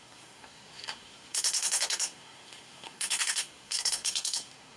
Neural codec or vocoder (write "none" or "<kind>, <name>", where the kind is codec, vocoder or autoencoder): codec, SNAC